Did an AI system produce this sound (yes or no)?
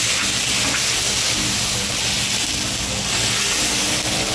no